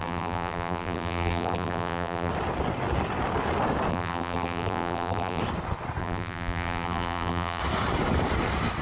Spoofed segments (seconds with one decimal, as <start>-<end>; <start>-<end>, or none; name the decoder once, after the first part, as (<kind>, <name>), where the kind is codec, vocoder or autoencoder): 0.0-2.3 (vocoder, BigVGAN v2); 3.9-5.4; 6.0-7.6